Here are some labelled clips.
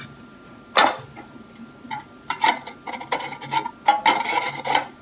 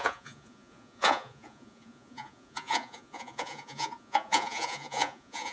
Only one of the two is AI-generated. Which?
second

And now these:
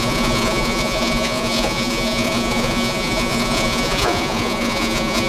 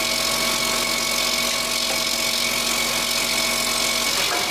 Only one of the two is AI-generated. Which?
first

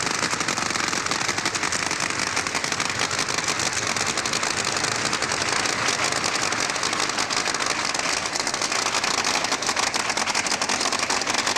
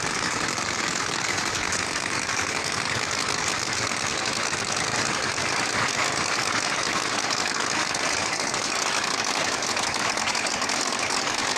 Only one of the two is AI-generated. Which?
second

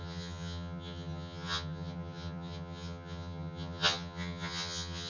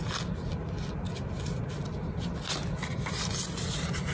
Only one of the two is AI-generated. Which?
first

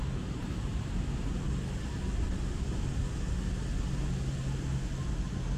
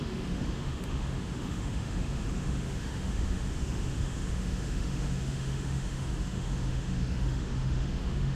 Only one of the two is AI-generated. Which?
second